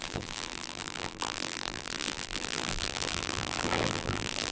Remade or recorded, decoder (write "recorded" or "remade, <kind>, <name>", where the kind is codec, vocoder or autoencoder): remade, vocoder, BigVGAN v2